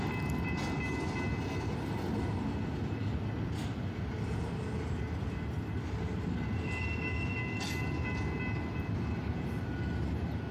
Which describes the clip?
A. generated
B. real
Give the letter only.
B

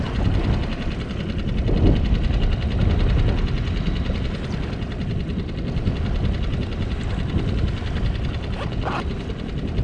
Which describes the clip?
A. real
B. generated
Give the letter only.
A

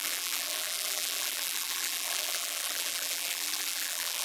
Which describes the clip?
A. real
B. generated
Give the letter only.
B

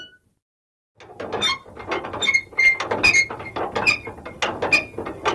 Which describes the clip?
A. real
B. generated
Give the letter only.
A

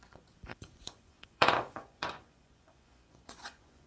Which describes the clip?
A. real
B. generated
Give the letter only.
B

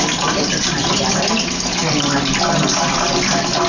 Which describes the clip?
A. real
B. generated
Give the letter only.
B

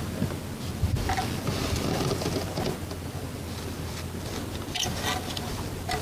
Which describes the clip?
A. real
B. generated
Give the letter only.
A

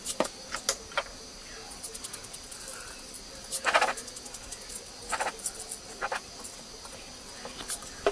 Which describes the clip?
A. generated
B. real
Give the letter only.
B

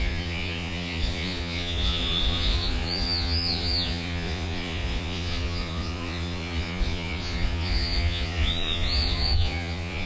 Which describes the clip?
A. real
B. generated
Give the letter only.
B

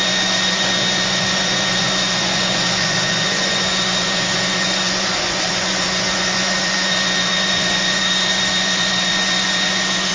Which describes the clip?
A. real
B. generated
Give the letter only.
B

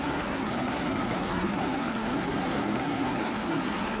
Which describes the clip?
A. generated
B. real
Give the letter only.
A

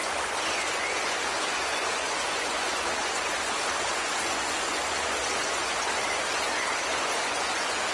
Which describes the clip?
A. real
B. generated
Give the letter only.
B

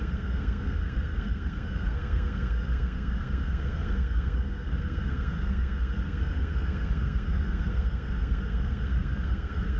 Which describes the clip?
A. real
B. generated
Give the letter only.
B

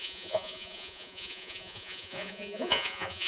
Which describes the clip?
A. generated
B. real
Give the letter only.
A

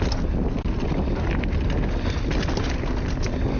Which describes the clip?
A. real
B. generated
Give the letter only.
A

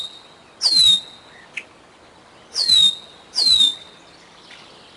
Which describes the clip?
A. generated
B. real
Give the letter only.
B